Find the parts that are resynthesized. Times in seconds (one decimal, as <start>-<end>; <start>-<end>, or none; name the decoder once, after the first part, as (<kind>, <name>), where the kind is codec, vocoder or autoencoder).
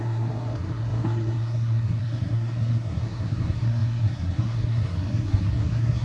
0.0-6.0 (codec, SNAC)